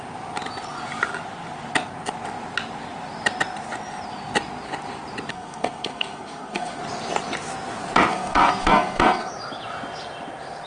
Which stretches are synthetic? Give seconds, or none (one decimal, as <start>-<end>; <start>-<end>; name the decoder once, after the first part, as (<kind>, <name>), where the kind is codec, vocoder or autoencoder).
5.3-6.8 (codec, SNAC); 8.1-9.3